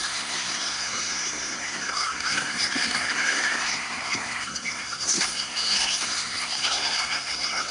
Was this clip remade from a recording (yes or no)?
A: yes